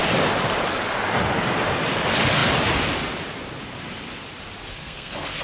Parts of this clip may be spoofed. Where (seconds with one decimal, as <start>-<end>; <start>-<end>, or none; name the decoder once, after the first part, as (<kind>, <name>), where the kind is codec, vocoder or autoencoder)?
4.7-5.4 (codec, SNAC)